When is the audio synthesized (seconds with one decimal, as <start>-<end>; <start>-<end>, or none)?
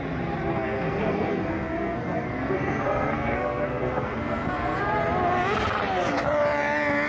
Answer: 0.5-4.8